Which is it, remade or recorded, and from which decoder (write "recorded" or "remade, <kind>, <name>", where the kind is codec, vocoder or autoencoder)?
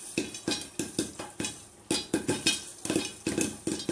recorded